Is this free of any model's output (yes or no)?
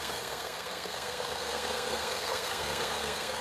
no